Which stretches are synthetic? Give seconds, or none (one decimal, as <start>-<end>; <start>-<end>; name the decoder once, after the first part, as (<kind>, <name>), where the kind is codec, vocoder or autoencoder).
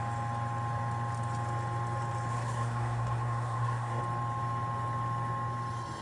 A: 2.3-4.0 (codec, SNAC)